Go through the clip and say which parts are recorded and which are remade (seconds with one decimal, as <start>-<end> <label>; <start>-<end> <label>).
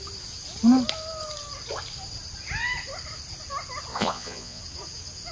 0.0-3.9 recorded; 3.9-4.6 remade; 4.6-5.3 recorded